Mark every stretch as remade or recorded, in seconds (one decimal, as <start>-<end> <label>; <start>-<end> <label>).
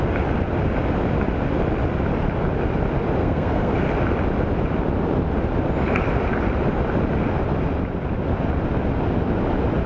0.0-3.2 recorded; 3.2-3.7 remade; 3.7-9.9 recorded